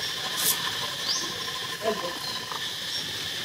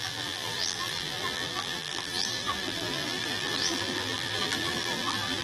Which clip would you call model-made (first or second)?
second